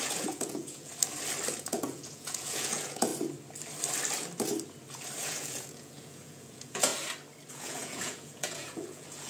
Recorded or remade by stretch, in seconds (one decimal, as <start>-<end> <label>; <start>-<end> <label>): 0.0-0.9 remade; 0.9-1.5 recorded; 1.5-3.1 remade; 3.1-5.2 recorded; 5.2-6.9 remade; 6.9-7.5 recorded; 7.5-9.3 remade